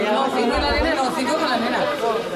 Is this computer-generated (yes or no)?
no